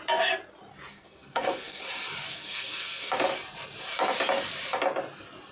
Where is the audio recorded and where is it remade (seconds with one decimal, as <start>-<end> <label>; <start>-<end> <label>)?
0.0-0.9 recorded; 0.9-1.8 remade; 1.8-2.3 recorded; 2.3-3.1 remade; 3.1-5.5 recorded